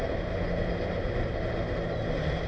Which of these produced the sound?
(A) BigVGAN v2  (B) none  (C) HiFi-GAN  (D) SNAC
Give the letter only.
B